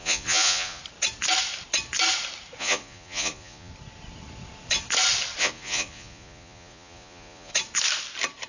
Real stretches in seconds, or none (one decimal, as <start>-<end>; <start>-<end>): 0.8-2.6; 3.7-5.4; 7.5-8.5